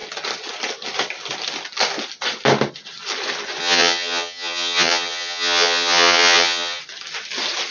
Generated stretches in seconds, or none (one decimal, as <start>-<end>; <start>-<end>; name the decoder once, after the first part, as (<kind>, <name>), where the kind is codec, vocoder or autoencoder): 3.6-6.8 (vocoder, HiFi-GAN)